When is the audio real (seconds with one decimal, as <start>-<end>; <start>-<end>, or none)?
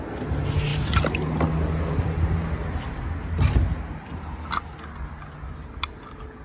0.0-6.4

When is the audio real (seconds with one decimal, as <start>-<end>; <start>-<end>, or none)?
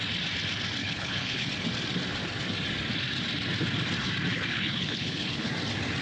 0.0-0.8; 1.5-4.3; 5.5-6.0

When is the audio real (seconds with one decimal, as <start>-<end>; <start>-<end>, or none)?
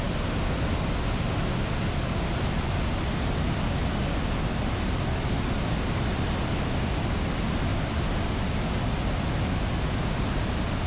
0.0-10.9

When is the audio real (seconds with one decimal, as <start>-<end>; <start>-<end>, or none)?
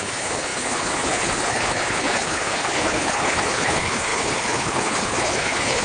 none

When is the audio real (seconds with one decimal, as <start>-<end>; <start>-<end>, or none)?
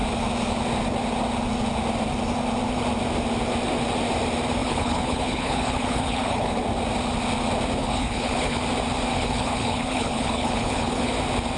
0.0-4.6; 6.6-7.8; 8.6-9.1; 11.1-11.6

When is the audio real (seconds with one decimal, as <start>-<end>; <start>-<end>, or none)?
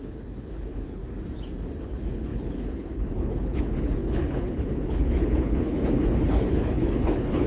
1.0-1.8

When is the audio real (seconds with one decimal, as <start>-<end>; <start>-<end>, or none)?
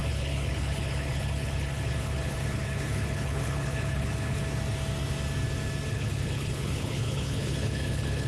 4.4-5.9